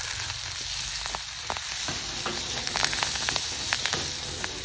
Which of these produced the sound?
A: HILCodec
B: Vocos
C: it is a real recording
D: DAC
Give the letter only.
C